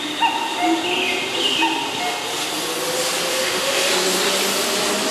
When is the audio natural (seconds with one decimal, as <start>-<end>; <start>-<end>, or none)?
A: 0.0-3.3; 3.9-5.1